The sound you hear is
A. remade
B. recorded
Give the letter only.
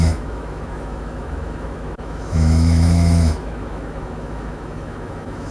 A